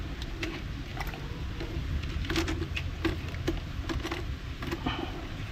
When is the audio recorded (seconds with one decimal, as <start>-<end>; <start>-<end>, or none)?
0.0-5.5